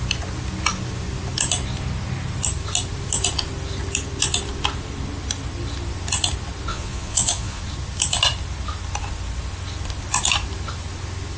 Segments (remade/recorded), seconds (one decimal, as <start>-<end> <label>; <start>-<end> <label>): 0.0-6.7 recorded; 6.7-7.6 remade; 7.6-11.4 recorded